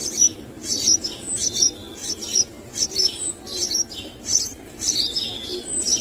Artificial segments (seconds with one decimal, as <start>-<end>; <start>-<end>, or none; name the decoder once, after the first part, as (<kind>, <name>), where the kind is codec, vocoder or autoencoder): none